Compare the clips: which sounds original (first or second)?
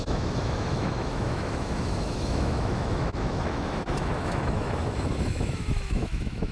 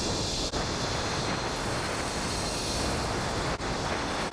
second